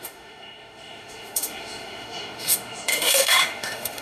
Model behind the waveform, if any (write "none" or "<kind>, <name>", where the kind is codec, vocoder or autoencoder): autoencoder, DAC-VAE